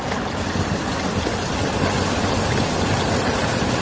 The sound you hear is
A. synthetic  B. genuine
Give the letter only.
B